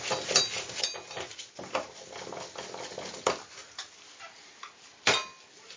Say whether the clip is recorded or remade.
recorded